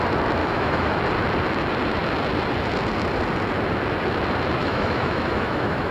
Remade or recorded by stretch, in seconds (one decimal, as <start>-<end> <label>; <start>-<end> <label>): 0.0-0.4 recorded; 0.4-1.0 remade; 1.0-4.6 recorded; 4.6-5.9 remade